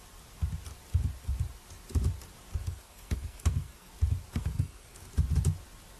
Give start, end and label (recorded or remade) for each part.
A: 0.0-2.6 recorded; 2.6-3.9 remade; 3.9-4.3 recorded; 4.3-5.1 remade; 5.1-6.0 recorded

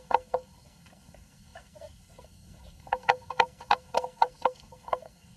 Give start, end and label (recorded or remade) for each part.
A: 0.0-5.4 remade

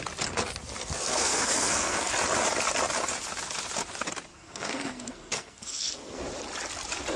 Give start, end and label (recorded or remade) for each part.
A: 0.0-0.8 recorded; 0.8-2.1 remade; 2.1-4.3 recorded; 4.3-6.2 remade; 6.2-7.2 recorded

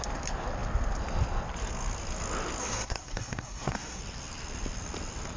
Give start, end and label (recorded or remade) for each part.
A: 0.0-2.6 recorded; 2.6-4.0 remade; 4.0-5.4 recorded